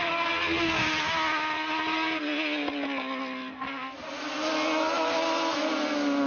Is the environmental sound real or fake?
real